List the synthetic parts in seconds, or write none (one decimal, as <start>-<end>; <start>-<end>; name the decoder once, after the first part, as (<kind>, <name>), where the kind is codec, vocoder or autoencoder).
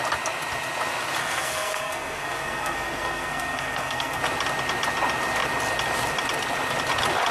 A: 1.2-4.2 (codec, SNAC)